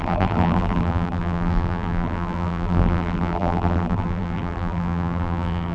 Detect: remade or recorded remade